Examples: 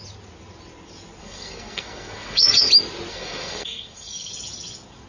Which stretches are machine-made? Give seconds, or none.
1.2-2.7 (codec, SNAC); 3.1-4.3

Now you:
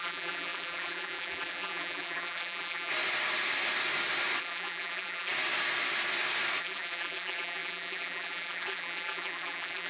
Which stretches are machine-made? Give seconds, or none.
0.0-2.9 (vocoder, BigVGAN v2); 4.4-5.3; 6.6-9.9

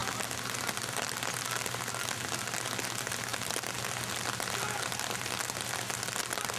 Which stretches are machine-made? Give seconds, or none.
none

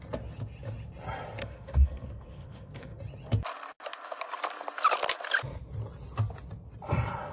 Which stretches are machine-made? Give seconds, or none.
1.4-3.0 (codec, SNAC)